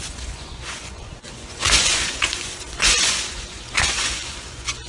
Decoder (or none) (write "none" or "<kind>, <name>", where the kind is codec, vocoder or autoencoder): vocoder, Vocos